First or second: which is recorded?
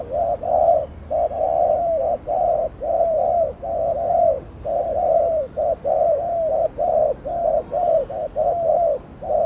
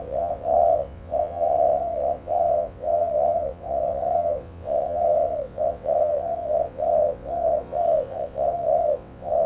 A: first